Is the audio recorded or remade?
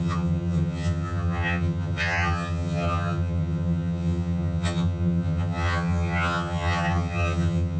remade